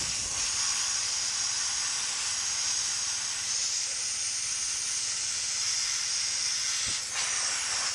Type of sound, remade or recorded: recorded